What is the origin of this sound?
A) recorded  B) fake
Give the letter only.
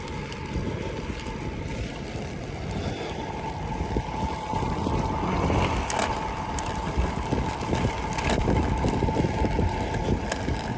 A